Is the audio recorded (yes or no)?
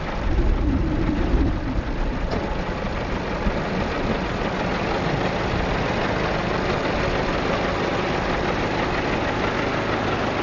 yes